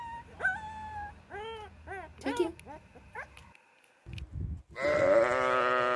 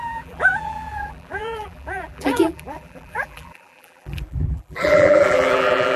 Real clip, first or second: first